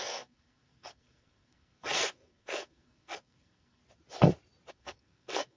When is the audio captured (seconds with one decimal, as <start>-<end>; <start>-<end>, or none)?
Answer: 3.8-4.7